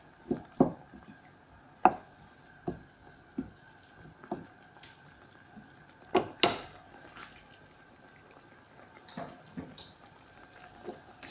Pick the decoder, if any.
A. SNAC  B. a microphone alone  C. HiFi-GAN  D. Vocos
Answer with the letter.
B